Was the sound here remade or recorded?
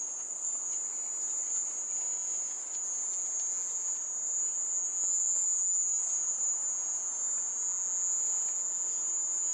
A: recorded